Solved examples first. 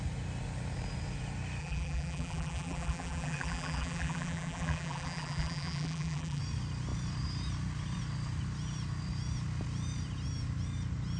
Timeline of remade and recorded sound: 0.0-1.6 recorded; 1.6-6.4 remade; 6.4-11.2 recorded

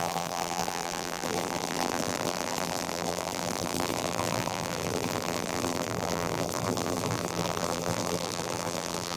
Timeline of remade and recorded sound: 0.0-9.2 remade

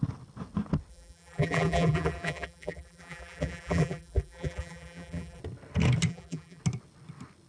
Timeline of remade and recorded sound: 0.0-0.9 recorded; 0.9-5.4 remade; 5.4-6.1 recorded; 6.1-6.6 remade; 6.6-7.5 recorded

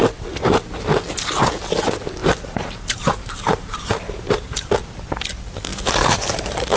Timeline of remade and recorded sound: 0.0-2.2 recorded; 2.2-4.7 remade; 4.7-5.7 recorded; 5.7-6.8 remade